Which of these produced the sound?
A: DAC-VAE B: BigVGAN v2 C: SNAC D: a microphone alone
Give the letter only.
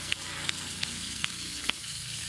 C